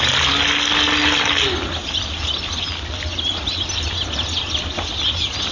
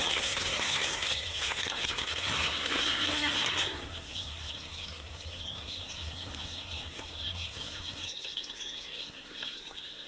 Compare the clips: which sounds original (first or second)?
first